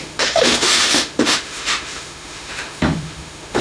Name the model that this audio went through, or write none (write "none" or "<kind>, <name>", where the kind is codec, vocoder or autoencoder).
autoencoder, DAC-VAE